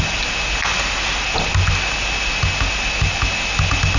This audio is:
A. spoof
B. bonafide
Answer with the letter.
B